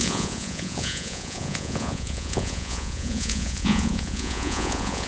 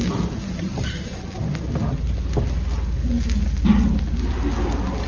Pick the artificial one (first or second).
first